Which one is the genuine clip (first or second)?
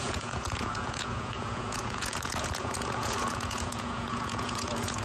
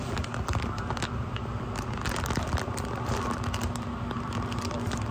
second